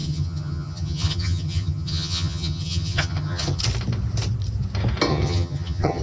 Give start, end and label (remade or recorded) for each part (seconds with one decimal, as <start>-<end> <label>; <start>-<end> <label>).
0.0-3.6 remade; 3.6-5.1 recorded; 5.1-6.0 remade